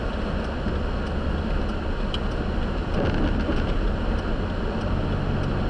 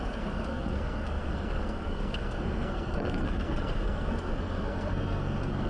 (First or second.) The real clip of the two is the first